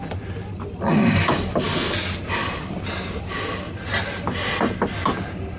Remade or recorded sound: recorded